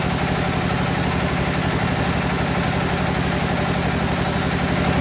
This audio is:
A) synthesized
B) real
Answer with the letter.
B